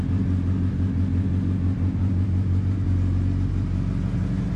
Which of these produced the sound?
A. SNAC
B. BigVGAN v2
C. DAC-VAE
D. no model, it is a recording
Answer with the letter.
D